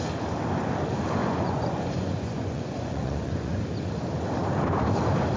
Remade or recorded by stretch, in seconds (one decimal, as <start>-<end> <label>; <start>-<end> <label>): 0.0-1.2 recorded; 1.2-3.6 remade; 3.6-5.4 recorded